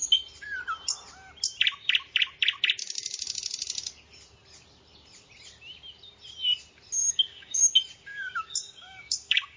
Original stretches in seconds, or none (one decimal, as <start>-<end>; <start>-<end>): 0.0-7.0; 7.6-8.1